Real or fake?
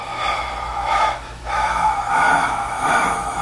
fake